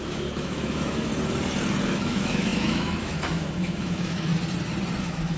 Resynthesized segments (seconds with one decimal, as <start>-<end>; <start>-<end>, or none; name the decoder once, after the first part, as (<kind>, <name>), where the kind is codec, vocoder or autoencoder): 0.0-1.1 (autoencoder, DAC-VAE); 1.9-4.3; 5.0-5.4